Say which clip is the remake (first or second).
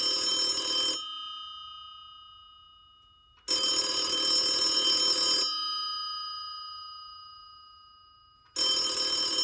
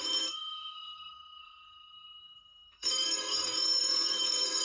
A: second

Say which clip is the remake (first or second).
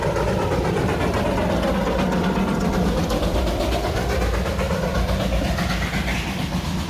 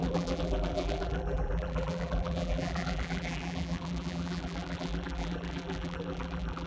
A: second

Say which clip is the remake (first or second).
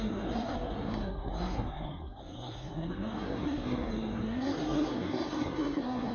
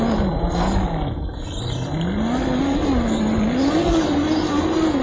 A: first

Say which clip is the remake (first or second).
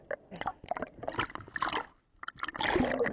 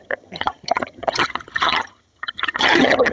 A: second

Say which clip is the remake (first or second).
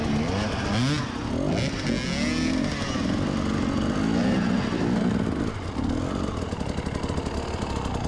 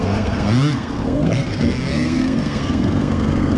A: second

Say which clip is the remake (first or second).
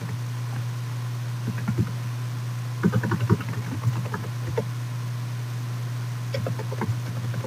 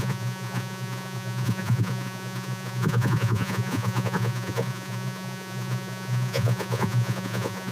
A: second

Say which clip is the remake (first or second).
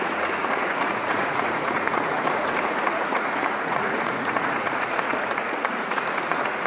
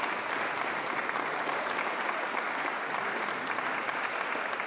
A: first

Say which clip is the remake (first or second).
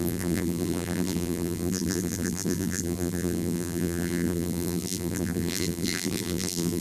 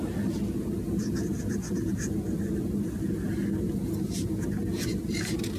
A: first